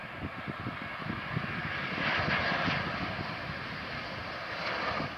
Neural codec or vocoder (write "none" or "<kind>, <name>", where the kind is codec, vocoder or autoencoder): none